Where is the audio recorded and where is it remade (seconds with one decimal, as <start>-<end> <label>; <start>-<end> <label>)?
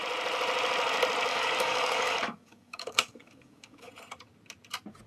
0.0-1.3 recorded; 1.3-3.9 remade; 3.9-5.1 recorded